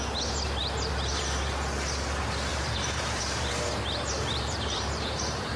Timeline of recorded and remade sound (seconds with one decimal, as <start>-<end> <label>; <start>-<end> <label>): 0.0-2.5 recorded; 2.5-5.6 remade